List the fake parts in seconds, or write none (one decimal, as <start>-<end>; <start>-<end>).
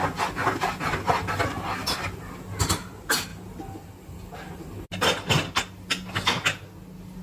none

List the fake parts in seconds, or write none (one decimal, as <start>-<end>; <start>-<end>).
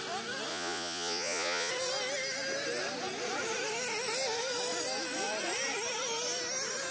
0.5-1.7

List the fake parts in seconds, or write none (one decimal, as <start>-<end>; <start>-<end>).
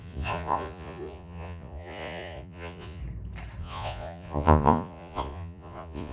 0.0-3.0; 3.6-6.1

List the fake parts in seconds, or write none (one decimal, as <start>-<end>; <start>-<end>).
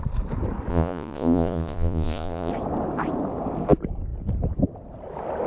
0.7-2.5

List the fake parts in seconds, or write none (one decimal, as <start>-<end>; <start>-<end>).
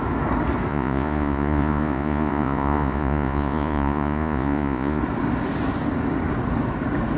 0.7-5.0